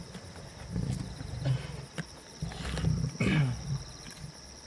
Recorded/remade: recorded